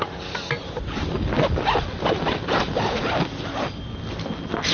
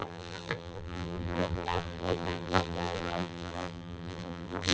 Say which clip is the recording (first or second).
first